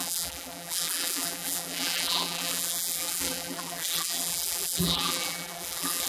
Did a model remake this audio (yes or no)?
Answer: yes